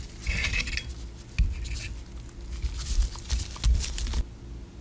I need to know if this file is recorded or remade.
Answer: recorded